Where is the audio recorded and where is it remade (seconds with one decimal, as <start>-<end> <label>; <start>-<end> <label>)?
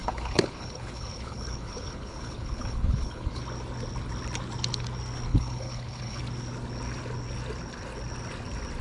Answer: 0.0-3.4 remade; 3.4-5.3 recorded; 5.3-6.2 remade; 6.2-8.8 recorded